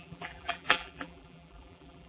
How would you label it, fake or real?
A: fake